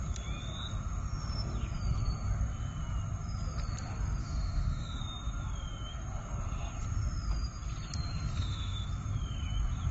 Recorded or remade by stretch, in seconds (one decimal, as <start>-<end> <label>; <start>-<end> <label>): 0.0-4.2 recorded; 4.2-5.0 remade; 5.0-8.3 recorded; 8.3-8.9 remade; 8.9-9.9 recorded